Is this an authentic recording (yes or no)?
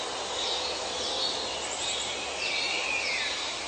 yes